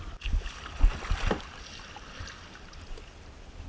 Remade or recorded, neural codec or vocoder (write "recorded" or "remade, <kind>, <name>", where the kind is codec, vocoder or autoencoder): recorded